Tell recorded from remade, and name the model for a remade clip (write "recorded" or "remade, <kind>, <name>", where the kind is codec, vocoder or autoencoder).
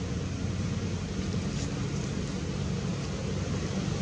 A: recorded